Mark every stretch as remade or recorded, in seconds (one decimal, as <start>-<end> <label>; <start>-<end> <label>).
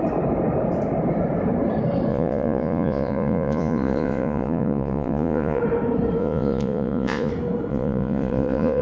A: 0.0-2.1 recorded; 2.1-5.6 remade; 5.6-6.2 recorded; 6.2-7.3 remade; 7.3-7.7 recorded; 7.7-8.8 remade